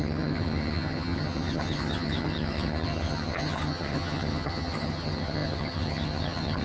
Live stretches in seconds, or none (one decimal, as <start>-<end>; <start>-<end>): none